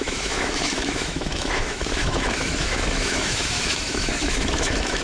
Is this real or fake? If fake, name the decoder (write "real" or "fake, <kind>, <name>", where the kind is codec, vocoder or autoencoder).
fake, autoencoder, DAC-VAE